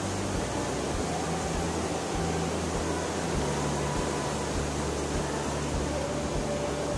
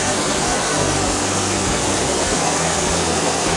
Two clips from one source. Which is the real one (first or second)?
first